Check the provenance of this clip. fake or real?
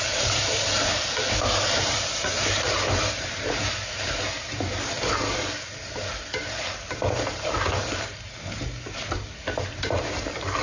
fake